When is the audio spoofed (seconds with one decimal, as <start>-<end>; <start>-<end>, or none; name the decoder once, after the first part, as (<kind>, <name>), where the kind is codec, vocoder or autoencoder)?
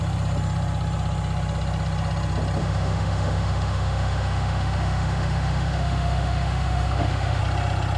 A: 2.6-7.4 (autoencoder, DAC-VAE)